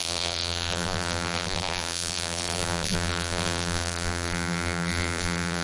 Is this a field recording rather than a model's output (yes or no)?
no